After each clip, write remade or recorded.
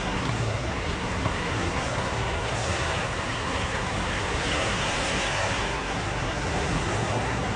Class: remade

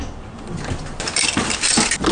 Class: recorded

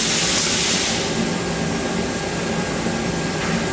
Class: recorded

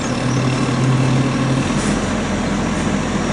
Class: recorded